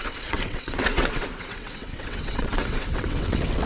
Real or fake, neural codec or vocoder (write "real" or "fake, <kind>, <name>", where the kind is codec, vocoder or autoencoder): fake, vocoder, WaveNeXt